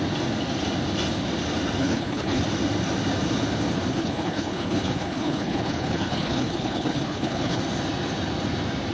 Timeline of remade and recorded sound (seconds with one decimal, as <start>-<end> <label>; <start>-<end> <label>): 0.0-1.8 recorded; 1.8-2.4 remade; 2.4-3.9 recorded; 3.9-7.6 remade; 7.6-8.9 recorded